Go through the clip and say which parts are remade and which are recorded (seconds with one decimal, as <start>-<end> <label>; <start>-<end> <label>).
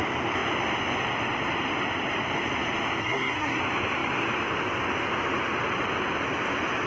0.0-3.0 recorded; 3.0-3.6 remade; 3.6-6.9 recorded